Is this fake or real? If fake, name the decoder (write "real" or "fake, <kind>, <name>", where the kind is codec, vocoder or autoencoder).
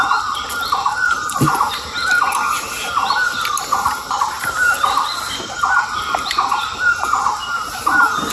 real